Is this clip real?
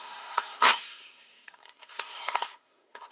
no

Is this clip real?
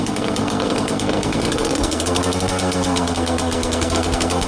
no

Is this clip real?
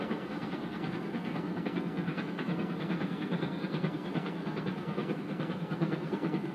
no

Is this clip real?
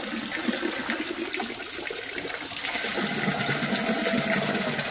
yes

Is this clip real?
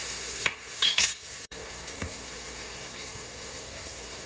no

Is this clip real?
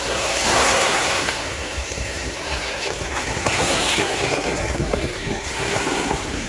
no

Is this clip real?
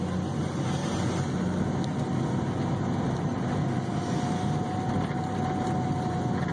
yes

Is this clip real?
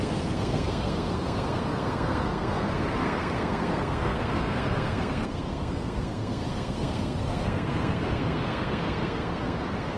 no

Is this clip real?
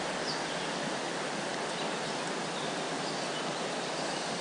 yes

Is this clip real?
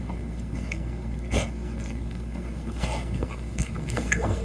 no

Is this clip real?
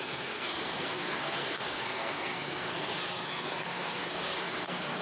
no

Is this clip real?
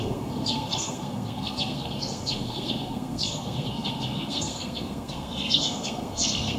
no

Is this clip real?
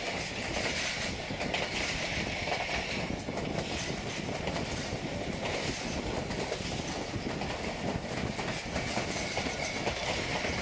yes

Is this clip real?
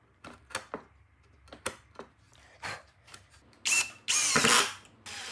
yes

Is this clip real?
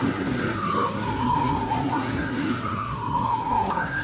no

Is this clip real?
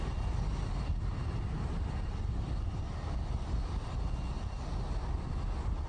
yes